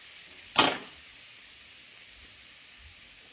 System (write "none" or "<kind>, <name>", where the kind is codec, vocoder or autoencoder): none